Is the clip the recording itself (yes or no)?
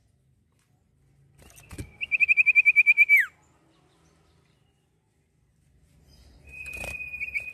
yes